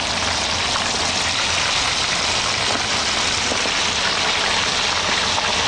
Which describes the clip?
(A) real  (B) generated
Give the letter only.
A